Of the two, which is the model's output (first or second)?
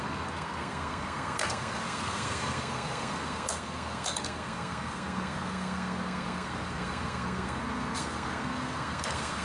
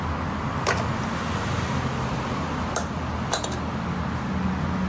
first